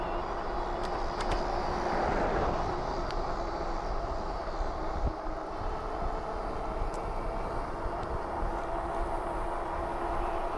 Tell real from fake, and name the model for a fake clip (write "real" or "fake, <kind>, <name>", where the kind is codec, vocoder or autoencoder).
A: real